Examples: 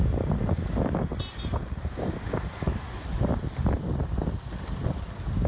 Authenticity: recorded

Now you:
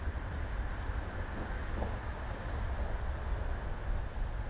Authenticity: recorded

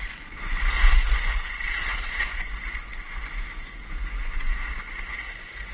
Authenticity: remade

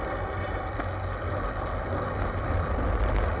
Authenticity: recorded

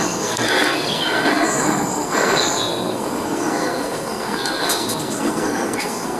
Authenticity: remade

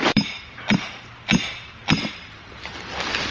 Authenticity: remade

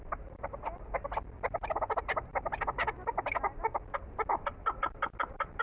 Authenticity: recorded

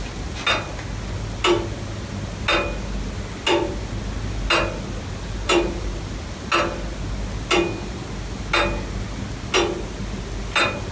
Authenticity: recorded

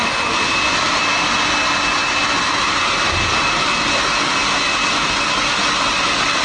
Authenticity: recorded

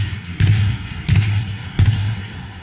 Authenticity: remade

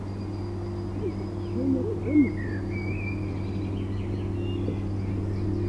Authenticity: recorded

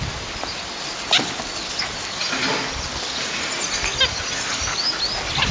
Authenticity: recorded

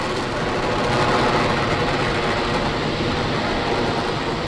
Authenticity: recorded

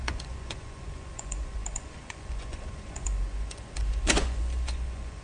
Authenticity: remade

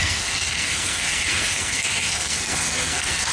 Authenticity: remade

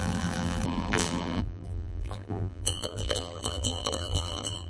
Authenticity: remade